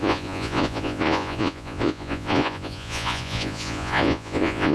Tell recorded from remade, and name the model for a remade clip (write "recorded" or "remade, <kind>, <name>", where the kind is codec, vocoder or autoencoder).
remade, vocoder, Vocos